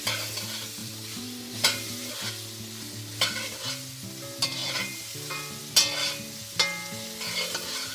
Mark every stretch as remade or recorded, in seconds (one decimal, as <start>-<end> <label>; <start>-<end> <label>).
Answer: 0.0-0.8 recorded; 0.8-2.1 remade; 2.1-7.9 recorded